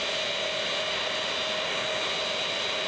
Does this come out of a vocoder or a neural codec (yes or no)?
no